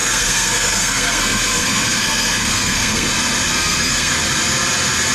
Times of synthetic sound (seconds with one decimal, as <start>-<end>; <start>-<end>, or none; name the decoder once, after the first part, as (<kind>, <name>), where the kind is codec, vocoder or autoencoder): 0.0-3.1 (codec, SNAC); 3.5-4.1